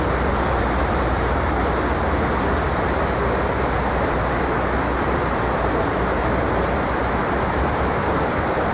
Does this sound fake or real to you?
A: fake